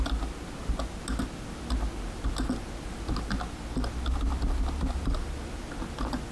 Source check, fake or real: real